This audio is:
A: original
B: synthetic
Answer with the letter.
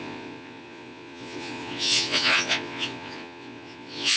B